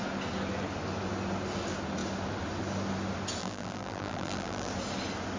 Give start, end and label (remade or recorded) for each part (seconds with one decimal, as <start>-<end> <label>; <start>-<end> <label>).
0.0-3.4 recorded; 3.4-4.7 remade; 4.7-5.4 recorded